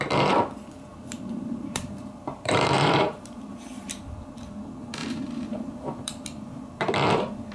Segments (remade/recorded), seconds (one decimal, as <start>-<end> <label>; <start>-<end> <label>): 0.0-0.9 recorded; 0.9-4.5 remade; 4.5-5.0 recorded; 5.0-6.8 remade; 6.8-7.5 recorded